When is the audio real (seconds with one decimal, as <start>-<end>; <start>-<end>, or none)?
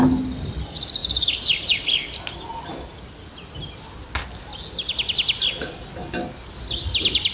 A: 0.0-7.3